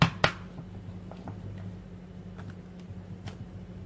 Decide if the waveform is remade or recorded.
recorded